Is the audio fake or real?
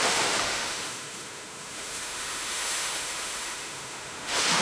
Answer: fake